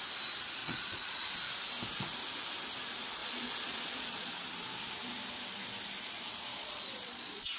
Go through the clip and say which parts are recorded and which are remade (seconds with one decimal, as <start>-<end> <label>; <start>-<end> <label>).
0.0-0.6 recorded; 0.6-1.3 remade; 1.3-3.2 recorded; 3.2-4.3 remade; 4.3-6.5 recorded; 6.5-7.6 remade